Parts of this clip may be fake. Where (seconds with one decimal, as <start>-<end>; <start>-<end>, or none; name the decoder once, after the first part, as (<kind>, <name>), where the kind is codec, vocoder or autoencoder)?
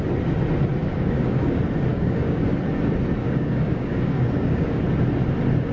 0.8-1.4 (codec, DAC); 1.9-2.4; 3.2-4.8